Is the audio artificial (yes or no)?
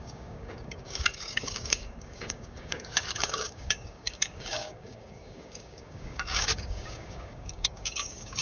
yes